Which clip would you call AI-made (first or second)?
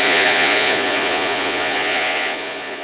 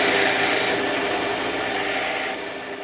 first